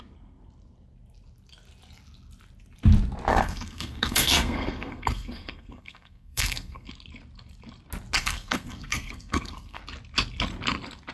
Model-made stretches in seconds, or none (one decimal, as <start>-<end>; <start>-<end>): 3.3-6.9; 8.2-9.8